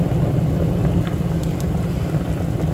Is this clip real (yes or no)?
yes